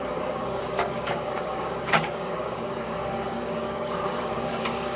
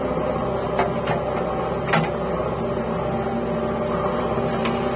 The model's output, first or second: first